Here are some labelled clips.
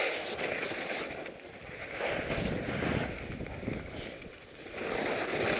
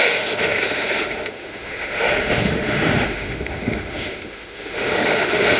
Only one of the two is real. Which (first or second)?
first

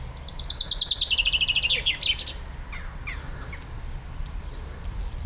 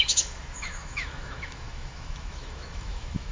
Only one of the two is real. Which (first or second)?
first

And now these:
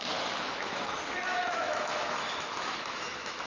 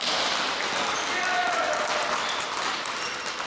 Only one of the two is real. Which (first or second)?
second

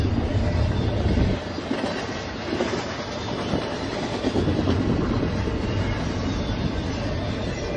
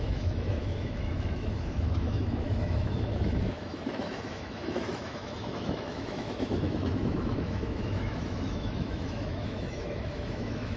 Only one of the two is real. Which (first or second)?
first